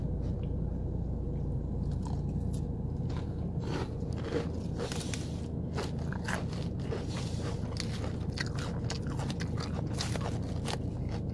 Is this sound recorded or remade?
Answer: recorded